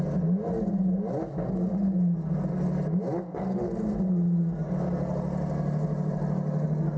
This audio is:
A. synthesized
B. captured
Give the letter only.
B